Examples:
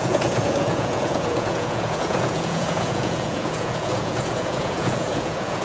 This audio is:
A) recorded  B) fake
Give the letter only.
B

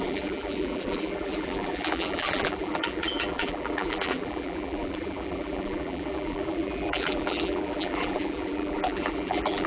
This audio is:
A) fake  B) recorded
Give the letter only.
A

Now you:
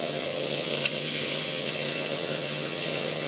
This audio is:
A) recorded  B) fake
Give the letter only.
B